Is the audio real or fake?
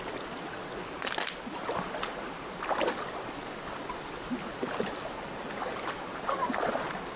real